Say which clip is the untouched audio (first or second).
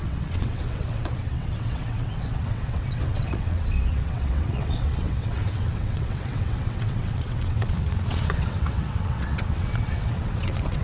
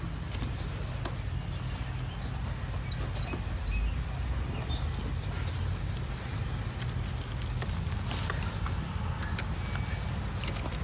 second